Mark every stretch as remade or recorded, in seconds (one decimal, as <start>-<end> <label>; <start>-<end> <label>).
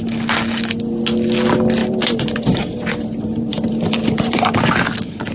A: 0.0-1.8 recorded; 1.8-4.6 remade; 4.6-5.3 recorded